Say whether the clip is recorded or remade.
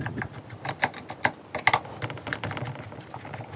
recorded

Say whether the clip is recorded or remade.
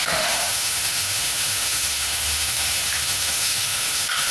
remade